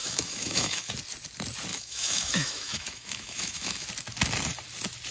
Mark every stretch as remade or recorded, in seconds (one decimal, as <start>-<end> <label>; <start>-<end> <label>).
0.0-0.9 remade; 0.9-1.7 recorded; 1.7-3.9 remade; 3.9-5.1 recorded